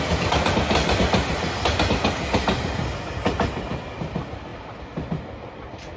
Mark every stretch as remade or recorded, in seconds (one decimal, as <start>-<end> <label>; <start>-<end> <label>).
0.0-6.0 recorded

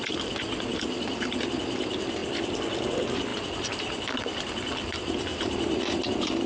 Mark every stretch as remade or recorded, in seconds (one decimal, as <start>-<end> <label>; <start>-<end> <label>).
0.0-0.7 recorded; 0.7-1.4 remade; 1.4-3.3 recorded; 3.3-4.1 remade; 4.1-5.3 recorded; 5.3-6.5 remade

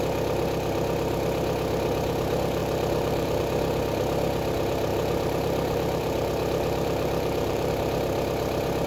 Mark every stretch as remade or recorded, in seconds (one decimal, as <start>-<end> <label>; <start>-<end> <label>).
0.0-2.6 recorded; 2.6-3.4 remade; 3.4-4.9 recorded; 4.9-7.7 remade; 7.7-8.9 recorded

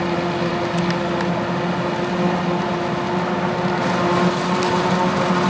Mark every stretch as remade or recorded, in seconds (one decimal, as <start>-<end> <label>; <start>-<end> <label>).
0.0-5.5 recorded

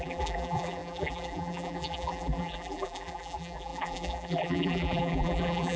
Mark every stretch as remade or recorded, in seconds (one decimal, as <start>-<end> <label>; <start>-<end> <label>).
0.0-5.8 remade

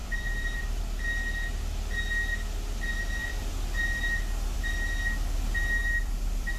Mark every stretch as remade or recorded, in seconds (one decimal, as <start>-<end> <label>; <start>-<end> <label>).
0.0-0.8 remade; 0.8-3.2 recorded; 3.2-4.6 remade; 4.6-5.8 recorded; 5.8-6.6 remade

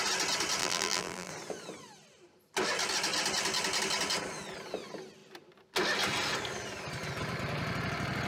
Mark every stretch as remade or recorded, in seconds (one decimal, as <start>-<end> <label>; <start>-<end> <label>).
0.0-0.6 recorded; 0.6-1.3 remade; 1.3-8.3 recorded